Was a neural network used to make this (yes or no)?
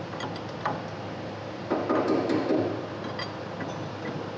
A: no